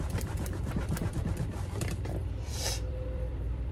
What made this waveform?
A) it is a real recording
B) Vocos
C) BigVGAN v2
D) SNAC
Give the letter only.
C